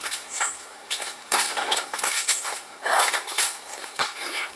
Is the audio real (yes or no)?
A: no